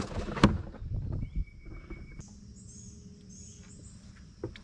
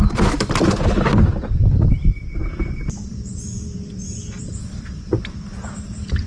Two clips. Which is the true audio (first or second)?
first